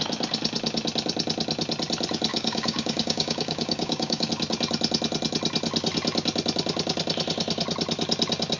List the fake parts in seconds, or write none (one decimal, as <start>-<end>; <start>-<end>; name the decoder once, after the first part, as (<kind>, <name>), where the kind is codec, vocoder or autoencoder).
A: 2.3-4.3 (codec, DAC)